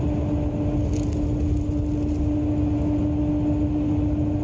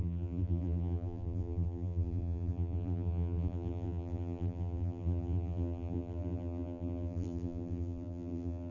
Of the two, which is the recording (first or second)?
first